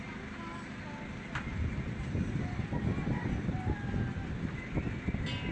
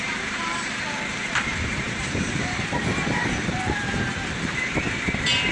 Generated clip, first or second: second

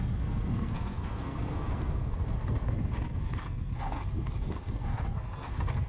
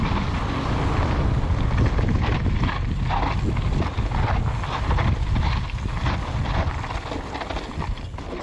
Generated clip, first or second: first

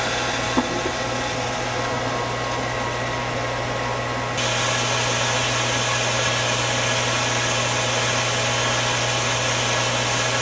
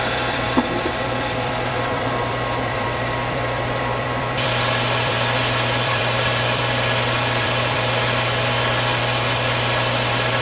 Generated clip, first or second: second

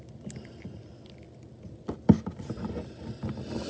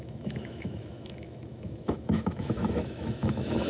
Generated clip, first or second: second